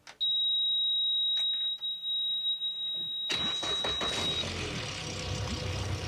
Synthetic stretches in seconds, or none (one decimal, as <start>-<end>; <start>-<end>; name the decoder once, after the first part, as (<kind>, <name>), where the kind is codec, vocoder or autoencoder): none